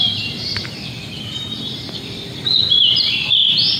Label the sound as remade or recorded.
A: remade